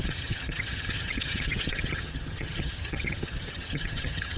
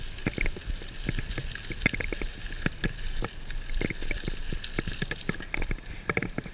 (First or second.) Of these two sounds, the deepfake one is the first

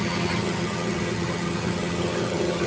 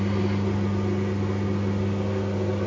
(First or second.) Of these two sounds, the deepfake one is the first